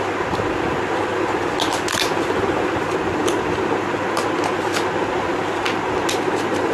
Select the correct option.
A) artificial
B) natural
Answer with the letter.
B